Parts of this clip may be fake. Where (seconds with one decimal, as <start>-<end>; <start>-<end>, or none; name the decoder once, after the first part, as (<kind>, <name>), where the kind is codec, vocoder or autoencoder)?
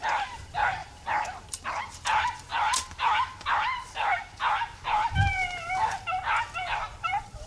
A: 0.0-2.5 (vocoder, BigVGAN v2); 7.0-7.5